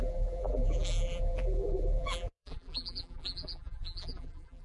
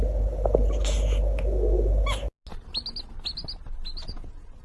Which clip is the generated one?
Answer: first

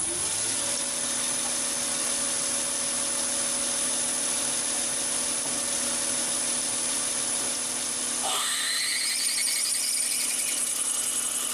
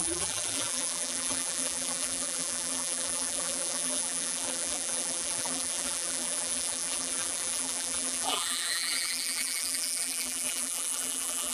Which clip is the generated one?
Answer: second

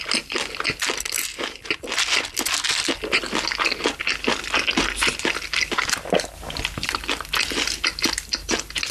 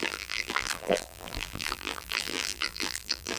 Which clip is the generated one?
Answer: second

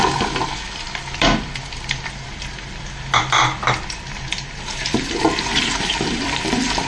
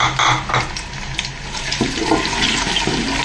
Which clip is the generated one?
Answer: first